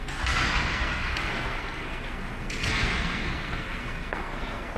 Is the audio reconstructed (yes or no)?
yes